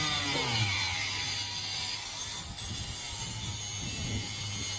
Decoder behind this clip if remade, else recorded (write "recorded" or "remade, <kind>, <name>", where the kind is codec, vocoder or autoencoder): recorded